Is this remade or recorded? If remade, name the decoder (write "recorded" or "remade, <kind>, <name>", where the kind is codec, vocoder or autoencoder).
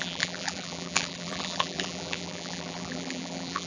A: remade, vocoder, BigVGAN v2